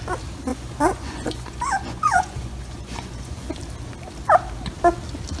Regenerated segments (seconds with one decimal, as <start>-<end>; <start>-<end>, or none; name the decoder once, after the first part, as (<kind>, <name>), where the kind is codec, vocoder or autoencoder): 0.5-3.5 (vocoder, Vocos)